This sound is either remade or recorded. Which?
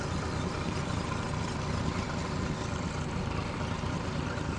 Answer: recorded